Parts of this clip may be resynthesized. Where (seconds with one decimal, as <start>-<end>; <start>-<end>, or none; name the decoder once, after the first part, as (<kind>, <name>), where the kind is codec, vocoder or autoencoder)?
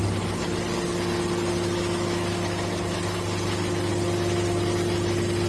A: none